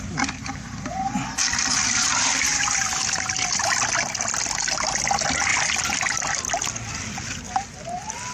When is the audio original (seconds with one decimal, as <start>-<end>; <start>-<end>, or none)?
0.0-8.3